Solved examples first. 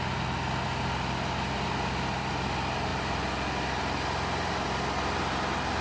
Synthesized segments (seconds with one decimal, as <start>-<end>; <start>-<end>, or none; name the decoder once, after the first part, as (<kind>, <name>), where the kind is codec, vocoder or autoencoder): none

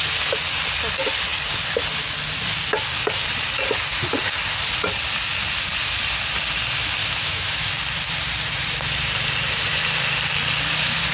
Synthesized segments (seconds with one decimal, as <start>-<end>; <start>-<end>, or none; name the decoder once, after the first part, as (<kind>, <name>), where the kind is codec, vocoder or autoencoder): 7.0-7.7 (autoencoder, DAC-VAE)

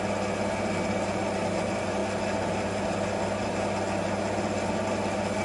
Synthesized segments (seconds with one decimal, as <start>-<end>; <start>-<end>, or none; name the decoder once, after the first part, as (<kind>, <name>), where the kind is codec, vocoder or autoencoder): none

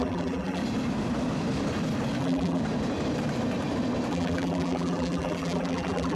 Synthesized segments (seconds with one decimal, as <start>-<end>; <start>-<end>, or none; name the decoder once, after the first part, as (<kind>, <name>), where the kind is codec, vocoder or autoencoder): 0.0-0.6 (vocoder, BigVGAN v2); 2.2-2.6; 4.1-6.2

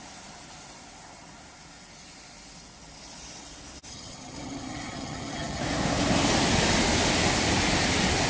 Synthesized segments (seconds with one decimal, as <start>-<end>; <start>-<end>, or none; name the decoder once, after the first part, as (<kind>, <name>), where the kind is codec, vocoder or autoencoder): 3.9-5.6 (vocoder, HiFi-GAN)

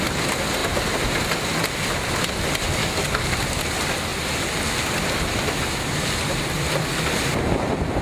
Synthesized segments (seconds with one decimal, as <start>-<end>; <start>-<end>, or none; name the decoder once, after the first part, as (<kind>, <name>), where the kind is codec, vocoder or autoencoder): 2.8-3.3 (codec, DAC)

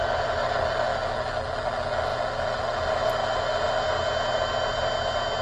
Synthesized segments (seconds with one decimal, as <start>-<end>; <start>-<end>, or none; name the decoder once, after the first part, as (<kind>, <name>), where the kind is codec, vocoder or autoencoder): none

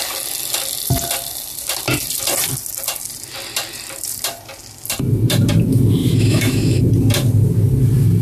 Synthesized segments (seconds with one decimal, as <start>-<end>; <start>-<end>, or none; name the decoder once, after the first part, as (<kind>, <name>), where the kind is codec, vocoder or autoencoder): 6.0-6.8 (autoencoder, DAC-VAE)